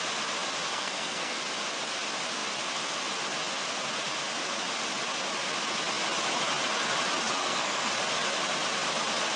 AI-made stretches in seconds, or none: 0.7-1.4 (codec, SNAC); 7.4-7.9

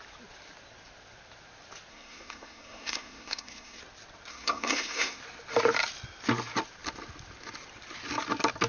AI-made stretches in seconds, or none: 1.9-3.8 (codec, SNAC); 4.3-5.2

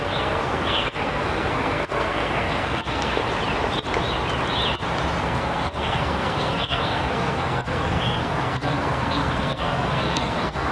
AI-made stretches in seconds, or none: 0.0-3.2 (codec, SNAC); 5.2-10.7

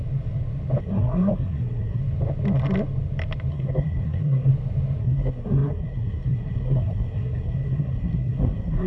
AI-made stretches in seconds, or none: 0.8-2.0 (codec, SNAC); 3.5-4.5; 5.0-8.9

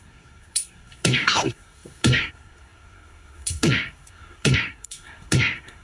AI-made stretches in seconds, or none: 0.0-5.8 (codec, SNAC)